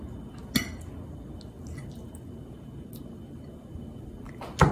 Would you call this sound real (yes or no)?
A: yes